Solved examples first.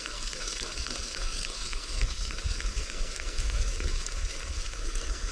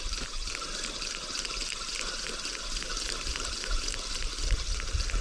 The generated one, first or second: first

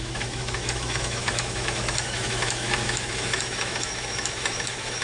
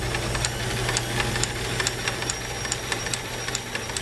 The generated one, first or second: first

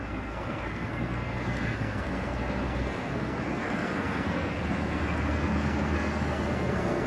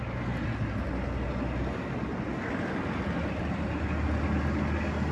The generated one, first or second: first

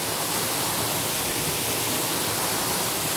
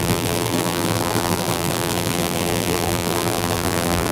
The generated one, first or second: second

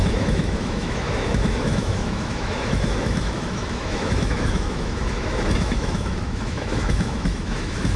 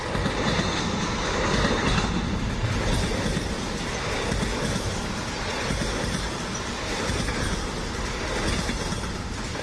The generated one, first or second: first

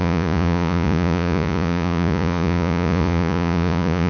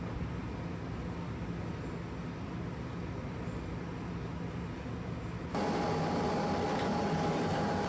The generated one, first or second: first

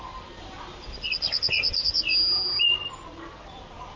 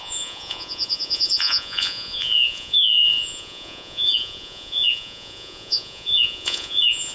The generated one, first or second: second